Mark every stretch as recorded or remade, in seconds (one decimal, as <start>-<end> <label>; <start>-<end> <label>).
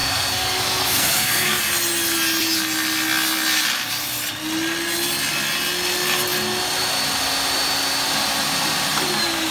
0.0-1.6 remade; 1.6-9.5 recorded